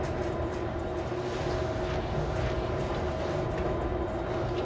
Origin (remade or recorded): recorded